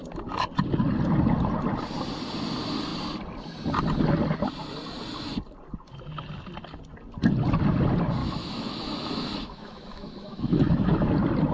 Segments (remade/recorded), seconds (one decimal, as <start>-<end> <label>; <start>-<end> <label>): 0.0-8.2 recorded; 8.2-11.1 remade; 11.1-11.5 recorded